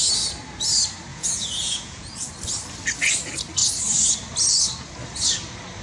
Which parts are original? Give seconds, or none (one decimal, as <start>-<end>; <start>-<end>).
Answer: 0.0-1.1; 2.3-5.8